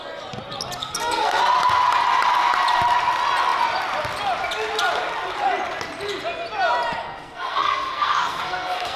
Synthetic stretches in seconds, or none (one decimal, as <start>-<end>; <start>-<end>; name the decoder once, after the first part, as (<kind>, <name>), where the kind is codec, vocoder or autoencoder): 0.8-1.4 (codec, SNAC); 7.0-9.0